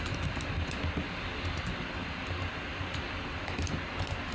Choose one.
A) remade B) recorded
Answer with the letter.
B